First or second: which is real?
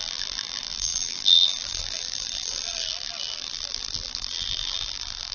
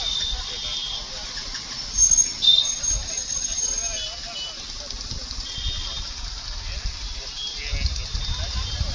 second